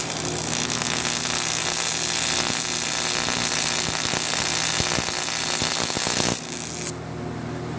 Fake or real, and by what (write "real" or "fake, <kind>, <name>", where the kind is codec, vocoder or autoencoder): real